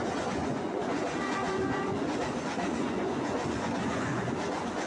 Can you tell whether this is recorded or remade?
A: remade